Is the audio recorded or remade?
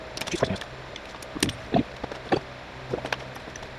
recorded